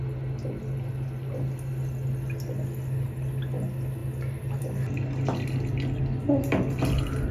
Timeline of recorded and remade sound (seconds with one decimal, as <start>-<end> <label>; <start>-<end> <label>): 0.0-7.3 recorded